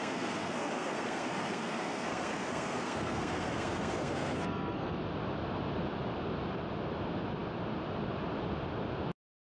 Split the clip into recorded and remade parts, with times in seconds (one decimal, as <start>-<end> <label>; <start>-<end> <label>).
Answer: 0.0-5.0 remade; 5.0-9.5 recorded